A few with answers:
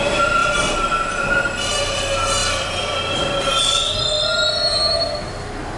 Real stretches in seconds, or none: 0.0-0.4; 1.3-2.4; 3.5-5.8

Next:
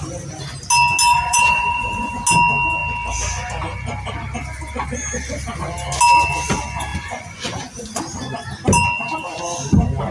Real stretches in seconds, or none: 0.0-1.1; 2.1-6.9; 8.0-10.1

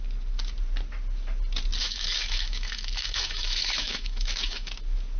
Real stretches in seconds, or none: 0.0-1.8; 4.7-5.2

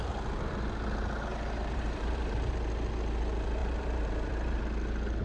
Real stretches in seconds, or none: 0.0-1.3; 2.5-3.6; 4.6-5.2

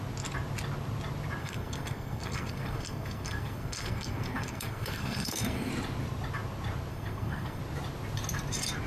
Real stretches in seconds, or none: 0.0-1.4; 5.7-6.9; 7.6-8.9